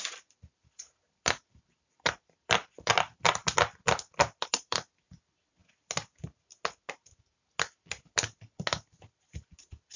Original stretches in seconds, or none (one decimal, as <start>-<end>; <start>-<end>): 3.4-4.3; 5.6-8.9